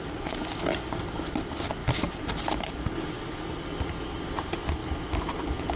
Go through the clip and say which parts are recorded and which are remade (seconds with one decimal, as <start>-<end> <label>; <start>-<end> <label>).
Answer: 0.0-4.8 recorded; 4.8-5.8 remade